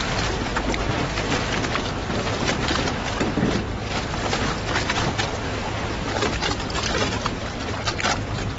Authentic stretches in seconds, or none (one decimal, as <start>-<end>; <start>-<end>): 0.0-8.6